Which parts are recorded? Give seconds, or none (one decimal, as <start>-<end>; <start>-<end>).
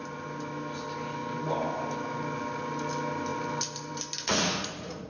0.0-4.3